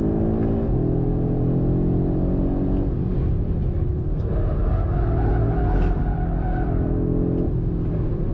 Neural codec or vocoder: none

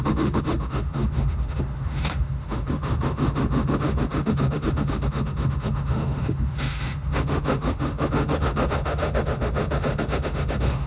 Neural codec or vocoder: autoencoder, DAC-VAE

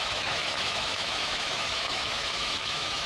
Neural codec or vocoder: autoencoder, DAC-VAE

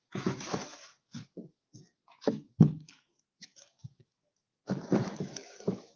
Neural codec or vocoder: autoencoder, DAC-VAE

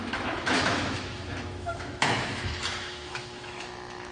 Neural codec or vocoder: autoencoder, DAC-VAE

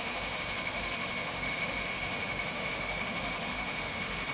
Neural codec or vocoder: autoencoder, DAC-VAE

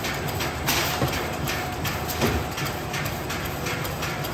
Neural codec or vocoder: none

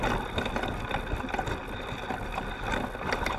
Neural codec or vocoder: none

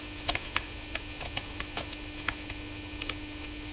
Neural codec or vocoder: autoencoder, DAC-VAE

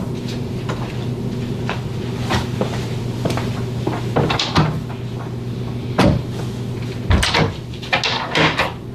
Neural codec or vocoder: none